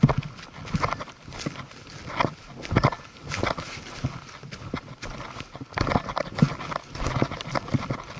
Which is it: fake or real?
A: real